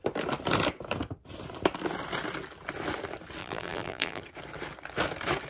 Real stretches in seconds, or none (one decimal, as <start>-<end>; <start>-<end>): 0.0-3.4; 4.2-5.5